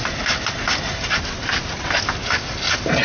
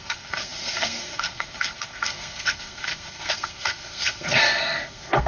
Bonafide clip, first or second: first